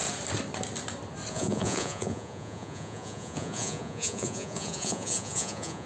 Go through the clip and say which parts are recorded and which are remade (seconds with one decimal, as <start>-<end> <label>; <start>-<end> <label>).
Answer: 0.0-1.3 recorded; 1.3-5.9 remade